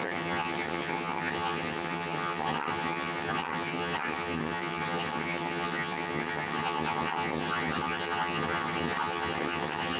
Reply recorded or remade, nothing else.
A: remade